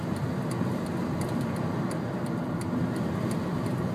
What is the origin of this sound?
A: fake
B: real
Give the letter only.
B